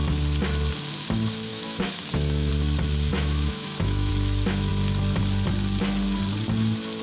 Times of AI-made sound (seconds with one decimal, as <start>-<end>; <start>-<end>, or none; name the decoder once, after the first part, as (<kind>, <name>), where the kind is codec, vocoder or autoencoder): 1.5-2.5 (autoencoder, DAC-VAE); 3.1-4.1